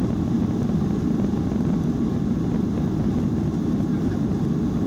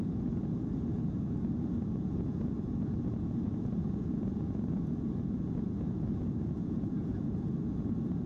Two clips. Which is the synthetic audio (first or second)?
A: second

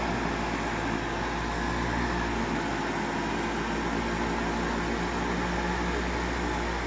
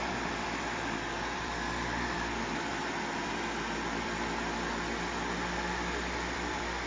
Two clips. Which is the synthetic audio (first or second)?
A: second